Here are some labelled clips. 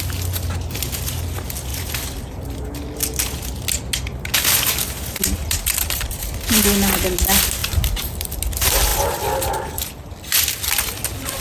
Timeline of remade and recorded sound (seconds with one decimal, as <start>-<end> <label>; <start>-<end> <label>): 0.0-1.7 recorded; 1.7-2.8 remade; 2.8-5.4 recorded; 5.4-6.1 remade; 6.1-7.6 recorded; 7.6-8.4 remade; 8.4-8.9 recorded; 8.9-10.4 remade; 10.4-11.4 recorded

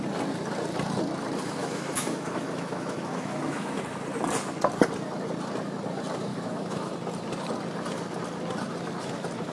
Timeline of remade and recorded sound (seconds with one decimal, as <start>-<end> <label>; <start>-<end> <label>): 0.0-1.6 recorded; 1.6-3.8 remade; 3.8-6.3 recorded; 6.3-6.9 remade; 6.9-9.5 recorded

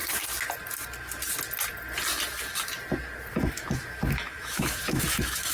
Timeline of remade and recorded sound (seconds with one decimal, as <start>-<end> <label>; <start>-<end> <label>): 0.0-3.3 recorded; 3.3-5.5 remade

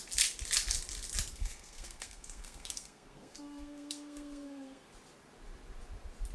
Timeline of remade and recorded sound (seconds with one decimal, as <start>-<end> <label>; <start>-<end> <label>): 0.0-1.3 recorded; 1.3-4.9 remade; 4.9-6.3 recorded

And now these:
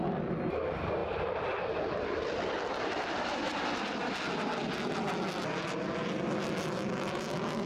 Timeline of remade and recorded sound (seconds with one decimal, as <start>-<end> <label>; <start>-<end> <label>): 0.0-7.7 recorded

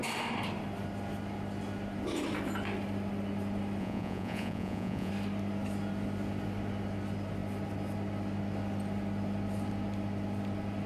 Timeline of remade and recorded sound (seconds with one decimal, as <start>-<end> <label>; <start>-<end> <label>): 0.0-3.8 recorded; 3.8-5.1 remade; 5.1-10.9 recorded

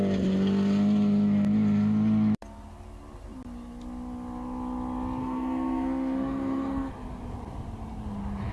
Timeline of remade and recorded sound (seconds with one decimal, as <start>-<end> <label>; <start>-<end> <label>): 0.0-5.2 recorded; 5.2-6.9 remade; 6.9-8.5 recorded